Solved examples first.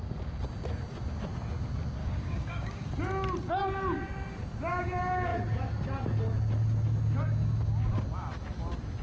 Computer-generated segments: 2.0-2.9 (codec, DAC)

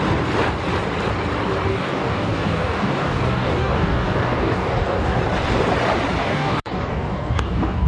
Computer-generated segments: 1.7-5.2 (codec, DAC); 6.2-7.9

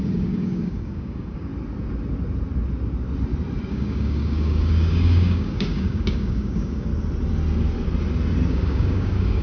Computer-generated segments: 0.0-1.5 (codec, DAC); 3.7-6.9; 8.5-9.4

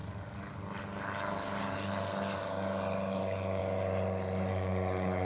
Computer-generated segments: 0.8-3.6 (codec, DAC); 4.5-5.2